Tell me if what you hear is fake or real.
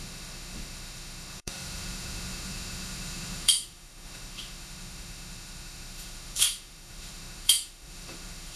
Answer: fake